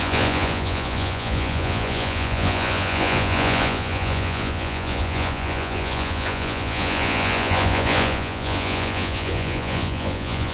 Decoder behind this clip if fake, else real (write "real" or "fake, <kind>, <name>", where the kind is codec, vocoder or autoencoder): fake, vocoder, Vocos